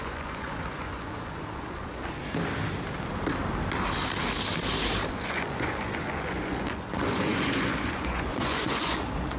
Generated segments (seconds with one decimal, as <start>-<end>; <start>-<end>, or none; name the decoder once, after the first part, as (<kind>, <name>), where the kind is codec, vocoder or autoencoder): 0.0-2.2 (vocoder, Vocos); 5.1-9.4